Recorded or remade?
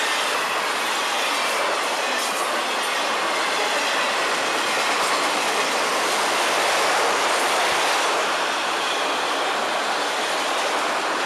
recorded